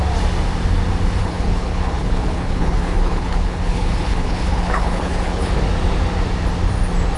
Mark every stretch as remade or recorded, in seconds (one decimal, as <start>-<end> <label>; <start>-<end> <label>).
0.0-1.2 recorded; 1.2-5.5 remade; 5.5-7.2 recorded